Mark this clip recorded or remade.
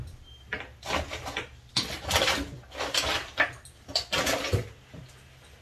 recorded